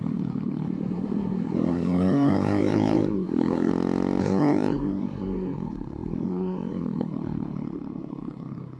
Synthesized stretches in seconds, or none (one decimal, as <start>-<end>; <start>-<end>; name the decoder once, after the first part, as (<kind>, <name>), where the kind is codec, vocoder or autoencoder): 0.0-3.7 (codec, SNAC); 4.2-8.8